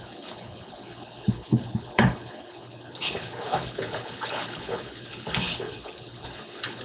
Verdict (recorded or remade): remade